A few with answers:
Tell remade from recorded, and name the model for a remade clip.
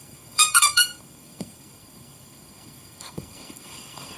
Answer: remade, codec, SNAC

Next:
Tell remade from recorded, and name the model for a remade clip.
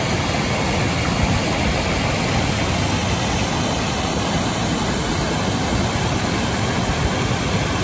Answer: recorded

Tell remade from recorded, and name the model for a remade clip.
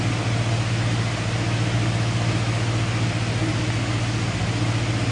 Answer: recorded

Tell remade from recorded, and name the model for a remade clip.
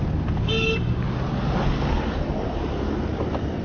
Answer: recorded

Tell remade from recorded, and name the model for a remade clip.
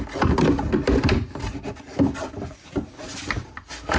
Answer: recorded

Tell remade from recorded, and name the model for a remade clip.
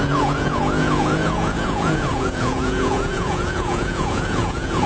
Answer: remade, vocoder, Vocos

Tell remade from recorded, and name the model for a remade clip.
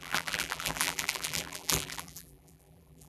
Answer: remade, vocoder, BigVGAN v2